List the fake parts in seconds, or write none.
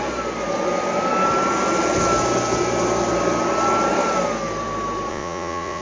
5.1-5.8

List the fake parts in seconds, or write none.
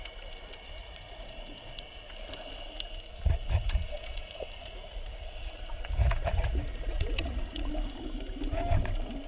0.8-2.1; 3.1-7.7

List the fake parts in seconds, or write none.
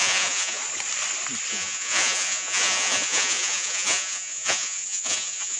0.0-0.6; 1.5-5.6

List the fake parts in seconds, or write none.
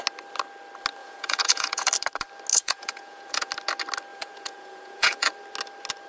1.0-1.9; 2.5-3.5; 4.1-5.3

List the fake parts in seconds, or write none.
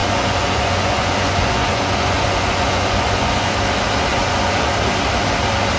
0.0-3.5; 4.1-4.7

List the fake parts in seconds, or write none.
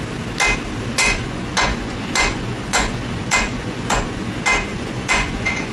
0.9-4.3; 4.7-5.7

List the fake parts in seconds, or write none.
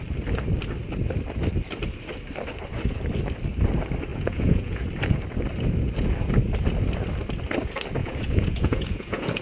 4.1-4.9; 8.0-9.4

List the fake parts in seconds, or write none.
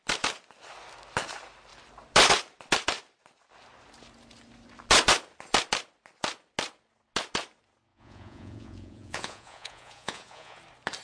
7.9-10.6